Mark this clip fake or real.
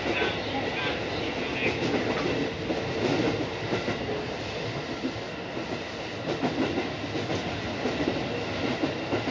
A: real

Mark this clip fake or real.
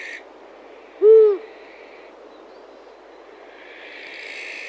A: real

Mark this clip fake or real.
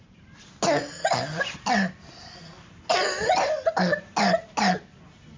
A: real